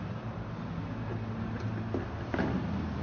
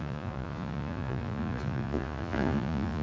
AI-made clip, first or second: second